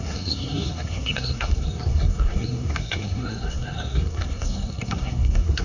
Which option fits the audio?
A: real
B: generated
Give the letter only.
B